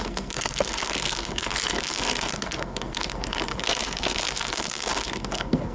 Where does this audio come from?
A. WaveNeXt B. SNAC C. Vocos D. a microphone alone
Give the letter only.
B